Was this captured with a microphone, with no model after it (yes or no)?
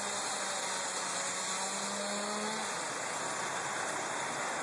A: yes